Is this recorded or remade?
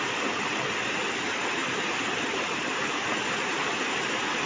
recorded